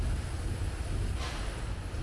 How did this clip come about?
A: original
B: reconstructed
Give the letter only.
A